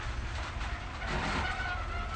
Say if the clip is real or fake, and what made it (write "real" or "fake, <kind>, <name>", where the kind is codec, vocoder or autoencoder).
real